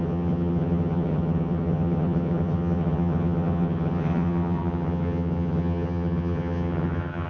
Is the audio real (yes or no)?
no